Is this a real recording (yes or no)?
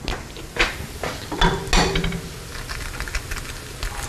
yes